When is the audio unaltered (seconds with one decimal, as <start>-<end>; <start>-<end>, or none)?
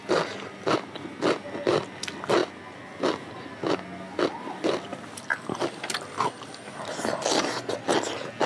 0.0-8.5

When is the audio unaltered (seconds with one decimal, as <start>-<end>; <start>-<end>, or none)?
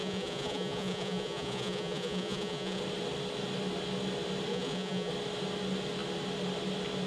2.8-4.5; 5.1-7.1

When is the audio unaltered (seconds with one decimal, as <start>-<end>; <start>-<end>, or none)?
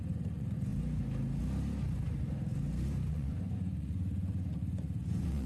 0.7-3.1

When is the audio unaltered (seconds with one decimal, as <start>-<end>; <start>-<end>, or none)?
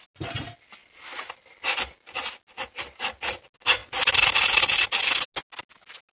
0.0-6.1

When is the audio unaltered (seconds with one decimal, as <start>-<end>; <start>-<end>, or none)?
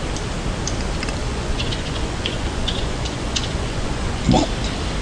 0.0-1.2; 4.2-5.0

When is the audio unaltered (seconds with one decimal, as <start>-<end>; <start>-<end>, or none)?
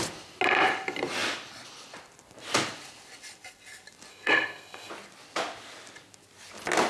0.0-4.1; 4.9-6.9